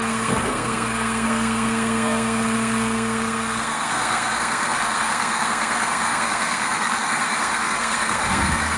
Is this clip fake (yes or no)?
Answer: yes